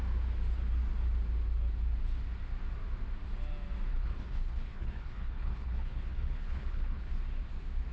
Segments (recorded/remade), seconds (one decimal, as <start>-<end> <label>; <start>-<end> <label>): 0.0-3.9 recorded; 3.9-7.1 remade; 7.1-7.9 recorded